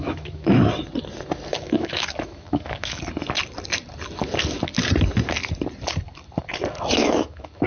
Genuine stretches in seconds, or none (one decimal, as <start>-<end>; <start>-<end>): 0.7-1.5; 3.0-7.0